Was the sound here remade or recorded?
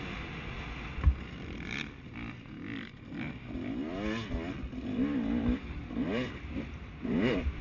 recorded